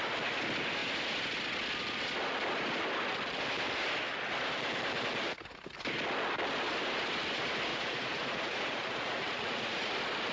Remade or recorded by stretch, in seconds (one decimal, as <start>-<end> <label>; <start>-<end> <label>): 0.0-7.7 recorded; 7.7-9.9 remade; 9.9-10.3 recorded